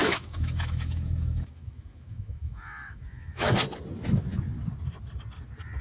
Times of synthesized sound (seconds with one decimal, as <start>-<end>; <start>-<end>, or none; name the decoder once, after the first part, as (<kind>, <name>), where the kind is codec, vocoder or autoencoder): 0.0-3.5 (autoencoder, DAC-VAE)

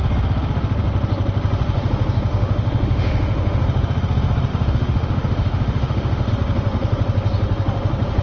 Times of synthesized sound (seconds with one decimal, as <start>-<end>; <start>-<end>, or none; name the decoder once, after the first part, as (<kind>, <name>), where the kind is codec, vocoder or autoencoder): 2.3-3.6 (autoencoder, DAC-VAE); 4.5-6.3